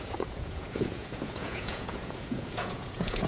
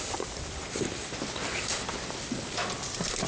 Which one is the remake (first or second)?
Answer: first